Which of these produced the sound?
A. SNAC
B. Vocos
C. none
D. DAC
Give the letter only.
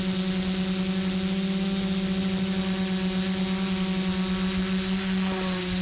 C